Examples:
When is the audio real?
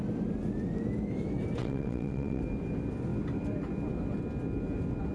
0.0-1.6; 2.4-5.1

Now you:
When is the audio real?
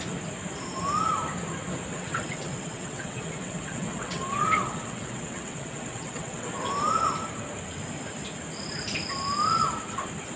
0.0-1.9; 6.5-10.4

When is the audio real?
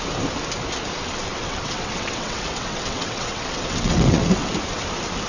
0.0-1.3; 4.5-5.3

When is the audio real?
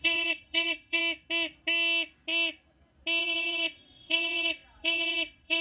1.0-3.2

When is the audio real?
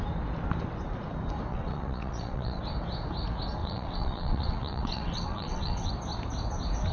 0.0-1.5; 2.6-3.6; 5.9-6.9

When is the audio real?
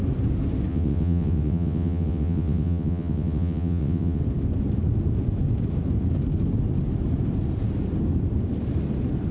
0.0-0.7; 4.2-9.3